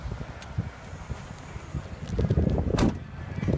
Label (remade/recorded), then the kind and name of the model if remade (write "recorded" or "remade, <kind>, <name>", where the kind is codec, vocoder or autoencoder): recorded